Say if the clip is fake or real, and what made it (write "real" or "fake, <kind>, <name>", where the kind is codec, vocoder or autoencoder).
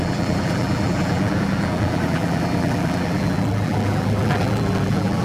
fake, vocoder, BigVGAN v2